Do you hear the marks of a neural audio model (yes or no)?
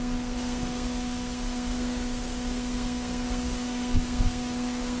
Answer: yes